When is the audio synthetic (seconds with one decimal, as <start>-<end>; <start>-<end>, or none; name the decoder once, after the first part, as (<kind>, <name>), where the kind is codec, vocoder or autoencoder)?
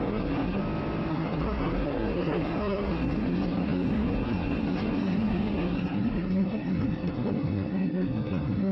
0.0-0.6 (codec, SNAC); 1.1-8.7